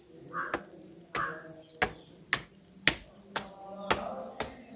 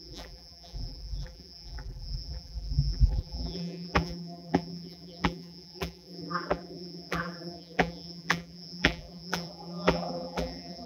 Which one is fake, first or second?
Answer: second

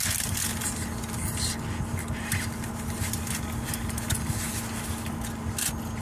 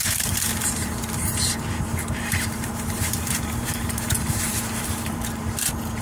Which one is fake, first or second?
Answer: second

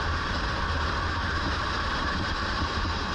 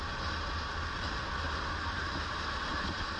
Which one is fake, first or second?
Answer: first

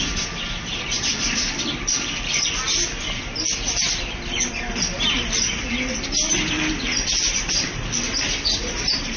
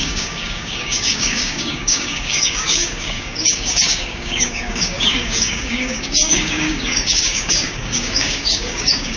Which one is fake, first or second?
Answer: second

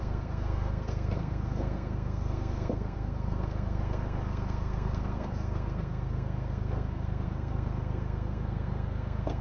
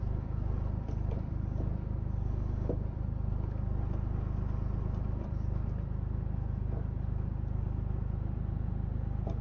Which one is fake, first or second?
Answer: first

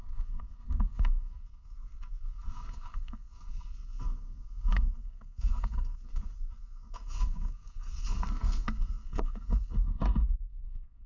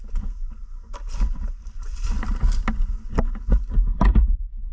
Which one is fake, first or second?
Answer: first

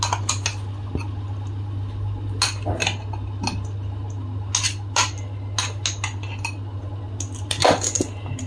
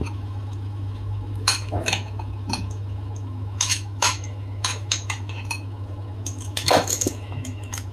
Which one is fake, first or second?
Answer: second